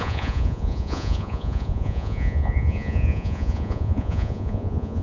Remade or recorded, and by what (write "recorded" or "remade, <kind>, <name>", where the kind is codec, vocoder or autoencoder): remade, vocoder, Vocos